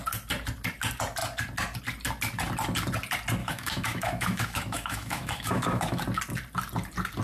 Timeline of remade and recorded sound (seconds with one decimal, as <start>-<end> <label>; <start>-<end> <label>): 0.0-3.4 recorded; 3.4-6.0 remade; 6.0-7.2 recorded